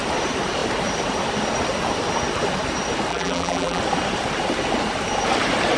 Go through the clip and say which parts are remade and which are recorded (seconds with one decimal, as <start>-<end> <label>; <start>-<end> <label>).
0.0-3.1 recorded; 3.1-3.8 remade; 3.8-5.8 recorded